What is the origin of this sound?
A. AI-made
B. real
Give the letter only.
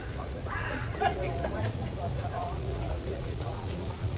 A